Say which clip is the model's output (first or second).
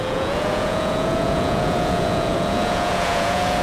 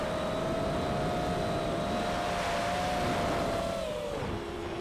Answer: first